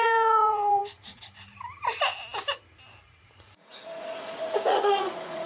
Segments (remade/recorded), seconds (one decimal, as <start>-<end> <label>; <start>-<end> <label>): 0.0-0.8 remade; 0.8-3.4 recorded; 3.4-5.5 remade